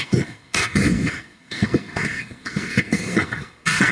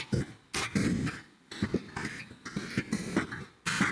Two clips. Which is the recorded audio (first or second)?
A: second